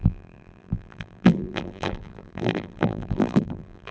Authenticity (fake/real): fake